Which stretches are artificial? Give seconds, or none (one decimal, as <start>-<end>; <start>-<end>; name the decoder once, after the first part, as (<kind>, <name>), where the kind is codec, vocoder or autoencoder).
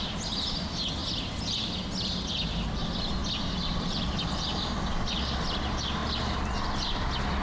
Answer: 3.2-4.2 (vocoder, BigVGAN v2)